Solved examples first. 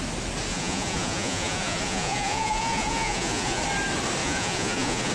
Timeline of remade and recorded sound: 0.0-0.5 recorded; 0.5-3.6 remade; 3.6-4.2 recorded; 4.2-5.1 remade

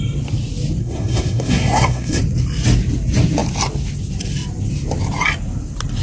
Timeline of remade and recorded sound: 0.0-0.8 recorded; 0.8-2.2 remade; 2.2-6.0 recorded

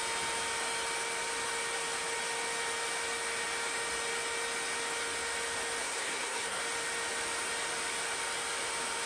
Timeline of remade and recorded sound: 0.0-5.8 recorded; 5.8-6.6 remade; 6.6-9.1 recorded

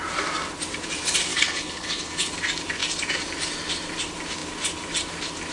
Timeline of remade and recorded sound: 0.0-1.3 recorded; 1.3-2.3 remade; 2.3-5.5 recorded

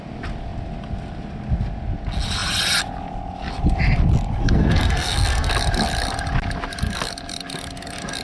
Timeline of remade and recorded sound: 0.0-4.4 recorded; 4.4-5.5 remade; 5.5-8.2 recorded

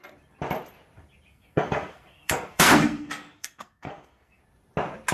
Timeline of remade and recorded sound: 0.0-1.3 recorded; 1.3-4.4 remade; 4.4-5.1 recorded

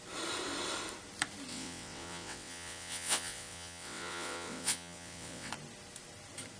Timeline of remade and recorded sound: 0.0-1.5 recorded; 1.5-5.5 remade; 5.5-6.6 recorded